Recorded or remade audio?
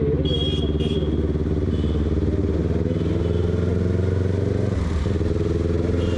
recorded